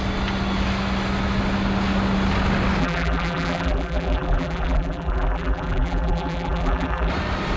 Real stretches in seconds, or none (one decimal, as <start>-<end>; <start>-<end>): 0.0-2.8; 7.1-7.6